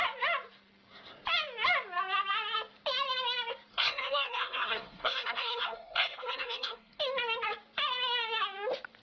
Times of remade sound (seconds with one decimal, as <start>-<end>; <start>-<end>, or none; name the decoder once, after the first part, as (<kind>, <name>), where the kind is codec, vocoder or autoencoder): 3.7-7.0 (codec, SNAC)